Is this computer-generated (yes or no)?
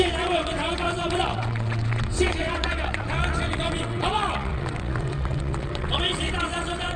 yes